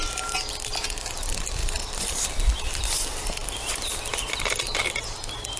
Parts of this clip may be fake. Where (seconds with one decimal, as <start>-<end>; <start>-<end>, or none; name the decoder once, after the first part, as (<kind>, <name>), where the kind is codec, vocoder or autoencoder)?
none